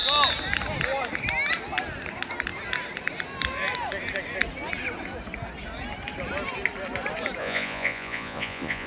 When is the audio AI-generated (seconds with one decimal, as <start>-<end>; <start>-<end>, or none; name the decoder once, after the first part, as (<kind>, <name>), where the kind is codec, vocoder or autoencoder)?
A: 7.4-8.9 (vocoder, Vocos)